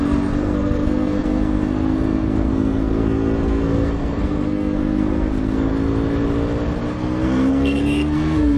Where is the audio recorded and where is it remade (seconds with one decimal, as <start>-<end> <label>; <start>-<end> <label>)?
0.0-5.7 remade; 5.7-6.9 recorded; 6.9-8.6 remade